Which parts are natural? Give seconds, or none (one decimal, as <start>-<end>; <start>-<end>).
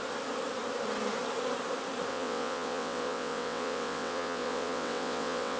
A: 0.0-2.1